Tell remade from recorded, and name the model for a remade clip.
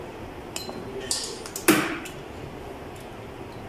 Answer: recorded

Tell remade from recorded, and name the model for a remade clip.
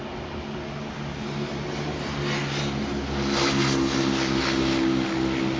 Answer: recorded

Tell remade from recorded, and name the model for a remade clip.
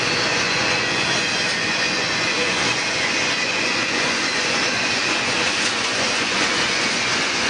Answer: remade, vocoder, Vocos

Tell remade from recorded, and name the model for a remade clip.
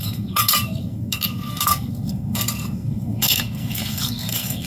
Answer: remade, codec, SNAC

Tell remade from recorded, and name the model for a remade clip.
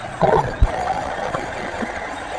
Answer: remade, vocoder, Vocos